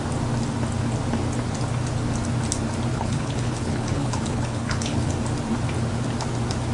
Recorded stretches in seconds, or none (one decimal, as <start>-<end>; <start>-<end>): 0.0-2.9; 5.1-6.7